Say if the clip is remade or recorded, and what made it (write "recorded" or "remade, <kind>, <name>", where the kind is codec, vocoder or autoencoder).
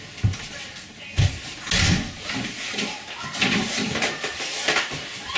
recorded